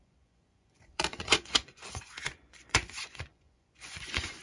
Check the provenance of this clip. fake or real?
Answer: fake